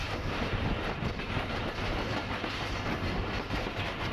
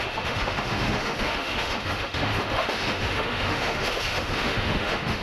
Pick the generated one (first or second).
second